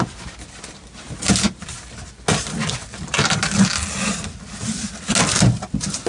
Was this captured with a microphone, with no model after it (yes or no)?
yes